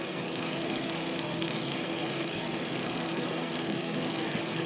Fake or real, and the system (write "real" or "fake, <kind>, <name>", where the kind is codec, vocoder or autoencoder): fake, codec, SNAC